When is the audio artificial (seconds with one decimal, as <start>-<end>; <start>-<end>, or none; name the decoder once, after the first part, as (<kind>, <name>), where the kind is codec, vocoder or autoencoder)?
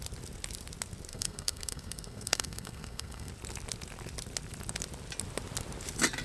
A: 1.1-3.3 (codec, SNAC)